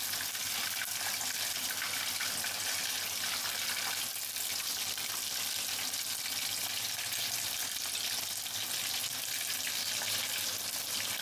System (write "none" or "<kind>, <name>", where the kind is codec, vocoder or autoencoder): none